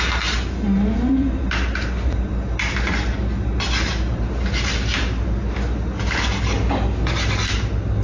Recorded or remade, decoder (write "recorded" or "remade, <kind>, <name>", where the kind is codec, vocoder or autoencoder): recorded